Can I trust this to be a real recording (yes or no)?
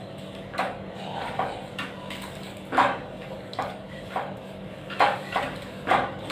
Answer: no